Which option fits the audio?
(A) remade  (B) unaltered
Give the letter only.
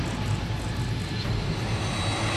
B